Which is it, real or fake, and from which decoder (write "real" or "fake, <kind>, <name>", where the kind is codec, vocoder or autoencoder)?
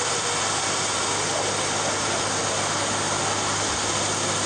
real